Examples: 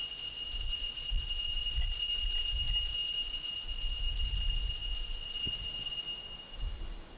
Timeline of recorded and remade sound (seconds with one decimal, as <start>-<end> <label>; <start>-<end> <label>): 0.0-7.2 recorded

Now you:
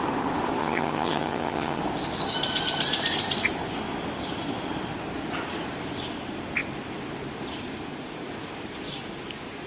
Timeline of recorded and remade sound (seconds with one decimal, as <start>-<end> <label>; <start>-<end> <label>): 0.0-0.6 recorded; 0.6-1.8 remade; 1.8-9.7 recorded

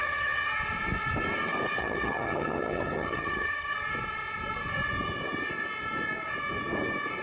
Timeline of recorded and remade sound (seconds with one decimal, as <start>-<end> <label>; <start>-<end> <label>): 0.0-0.6 remade; 0.6-1.8 recorded; 1.8-3.7 remade; 3.7-7.2 recorded

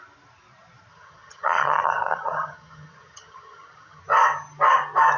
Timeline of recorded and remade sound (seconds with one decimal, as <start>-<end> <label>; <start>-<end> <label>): 0.0-0.9 recorded; 0.9-4.0 remade; 4.0-5.2 recorded